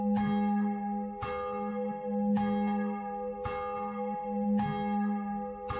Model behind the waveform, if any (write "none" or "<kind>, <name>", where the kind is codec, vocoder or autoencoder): none